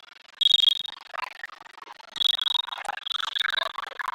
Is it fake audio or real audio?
real